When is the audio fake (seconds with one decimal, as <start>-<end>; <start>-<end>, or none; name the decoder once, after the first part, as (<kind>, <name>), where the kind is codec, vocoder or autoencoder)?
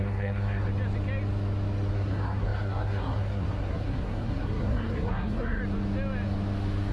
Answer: 0.0-0.7 (codec, SNAC); 1.9-5.6